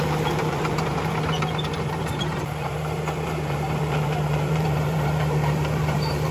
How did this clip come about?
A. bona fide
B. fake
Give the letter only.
B